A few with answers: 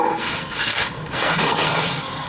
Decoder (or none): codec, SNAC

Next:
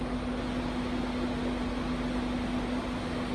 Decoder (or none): none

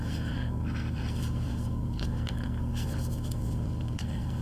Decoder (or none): codec, SNAC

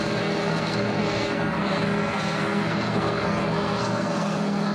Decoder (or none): codec, SNAC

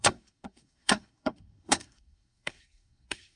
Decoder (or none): codec, SNAC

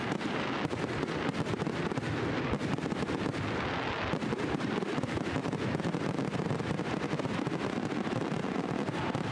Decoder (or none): none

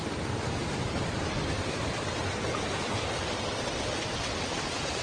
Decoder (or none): none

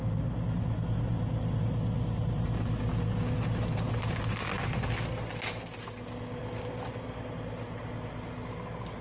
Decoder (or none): none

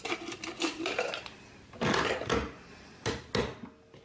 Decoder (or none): none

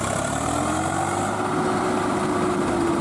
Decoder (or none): none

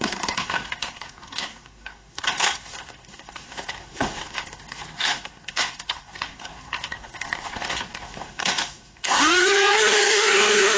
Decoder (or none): codec, SNAC